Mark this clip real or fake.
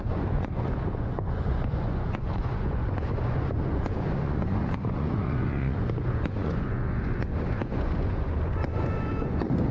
fake